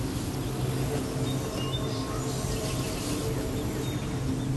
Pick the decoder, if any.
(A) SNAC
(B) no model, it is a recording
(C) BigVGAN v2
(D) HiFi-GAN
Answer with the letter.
B